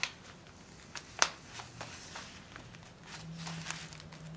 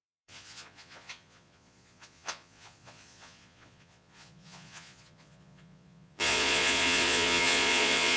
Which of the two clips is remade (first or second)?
second